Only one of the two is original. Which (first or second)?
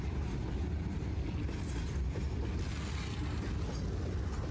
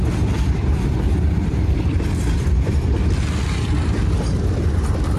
first